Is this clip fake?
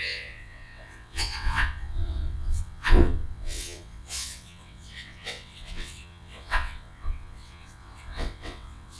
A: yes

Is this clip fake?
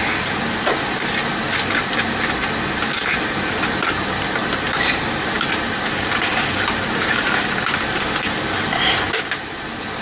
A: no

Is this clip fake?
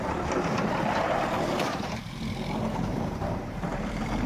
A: yes